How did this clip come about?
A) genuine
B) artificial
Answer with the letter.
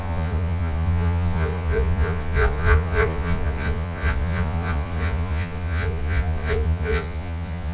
B